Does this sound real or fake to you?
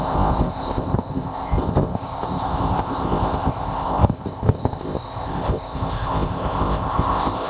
fake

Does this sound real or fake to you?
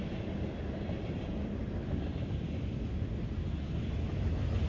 real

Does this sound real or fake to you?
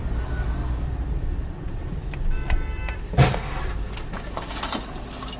real